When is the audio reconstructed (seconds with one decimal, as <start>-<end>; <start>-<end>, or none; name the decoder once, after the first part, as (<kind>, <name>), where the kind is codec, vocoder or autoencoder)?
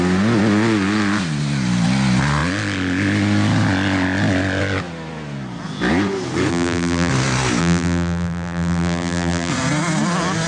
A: 6.5-7.1 (vocoder, BigVGAN v2); 7.6-9.5